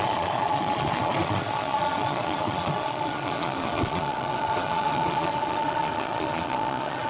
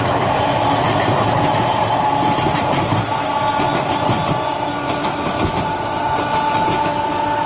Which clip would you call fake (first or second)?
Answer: first